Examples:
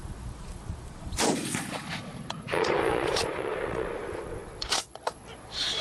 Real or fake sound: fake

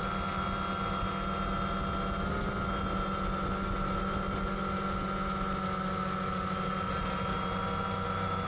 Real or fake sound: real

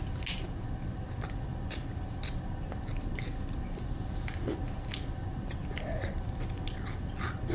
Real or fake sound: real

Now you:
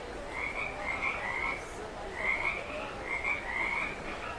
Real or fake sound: real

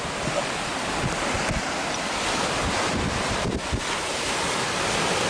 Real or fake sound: real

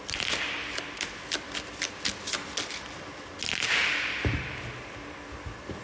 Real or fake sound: real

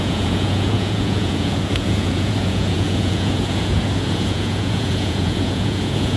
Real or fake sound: fake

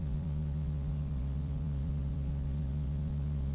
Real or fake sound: fake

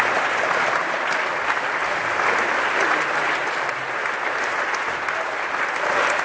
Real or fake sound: real